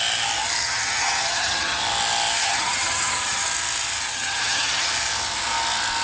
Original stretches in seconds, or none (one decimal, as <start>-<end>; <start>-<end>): 0.0-0.6; 1.8-2.4; 3.4-4.1; 4.9-6.0

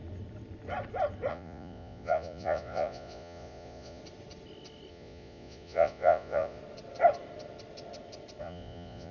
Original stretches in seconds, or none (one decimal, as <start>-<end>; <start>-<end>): 0.0-1.3; 4.0-4.9; 6.6-8.4

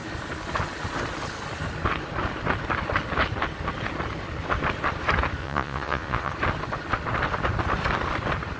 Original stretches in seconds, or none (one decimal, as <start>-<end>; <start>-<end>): 0.0-5.4; 6.3-8.6